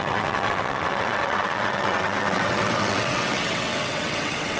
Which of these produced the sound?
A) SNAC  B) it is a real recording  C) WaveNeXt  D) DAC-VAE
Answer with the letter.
C